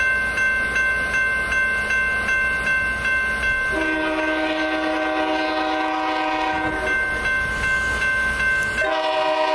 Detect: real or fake real